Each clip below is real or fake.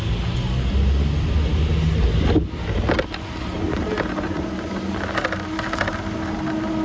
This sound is real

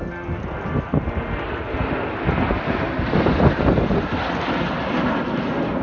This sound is real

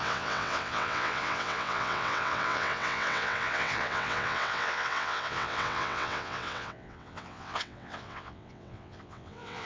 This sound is fake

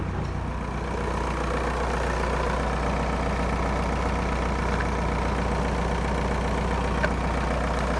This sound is real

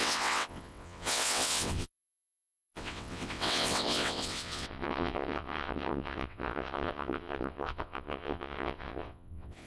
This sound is fake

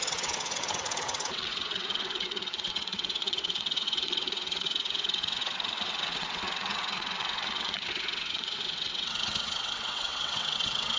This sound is fake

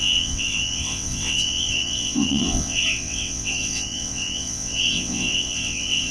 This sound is fake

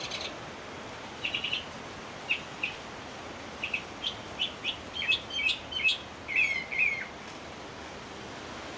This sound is real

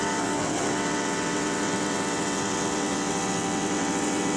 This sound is fake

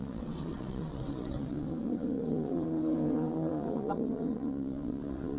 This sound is fake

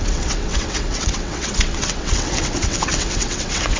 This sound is fake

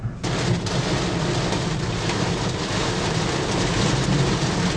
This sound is real